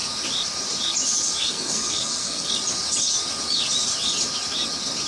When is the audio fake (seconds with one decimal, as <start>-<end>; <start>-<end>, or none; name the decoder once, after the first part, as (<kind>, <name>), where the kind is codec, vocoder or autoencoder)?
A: 1.4-2.5 (codec, SNAC)